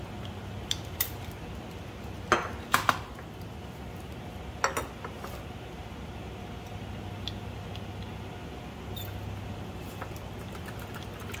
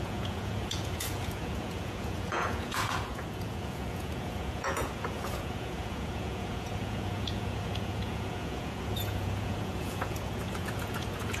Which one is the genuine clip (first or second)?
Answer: first